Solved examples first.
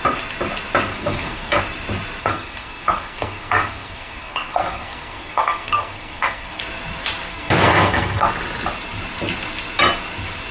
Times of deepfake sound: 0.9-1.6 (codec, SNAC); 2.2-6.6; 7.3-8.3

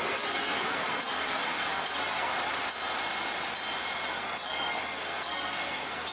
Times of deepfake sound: 0.0-2.3 (codec, SNAC); 4.1-6.1

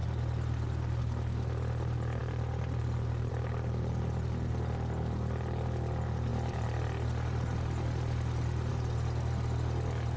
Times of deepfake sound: none

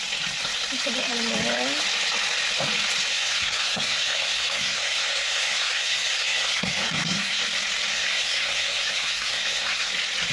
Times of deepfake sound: 3.1-7.4 (codec, SNAC); 7.9-9.9

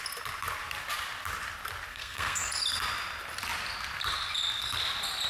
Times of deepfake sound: 1.9-2.5 (codec, SNAC)

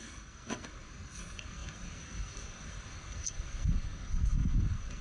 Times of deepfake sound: 0.0-5.0 (codec, SNAC)

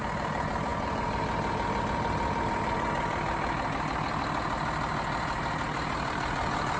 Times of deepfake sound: none

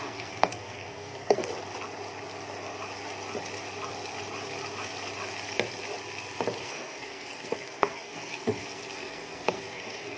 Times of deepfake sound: 0.0-1.5 (codec, SNAC); 6.6-10.2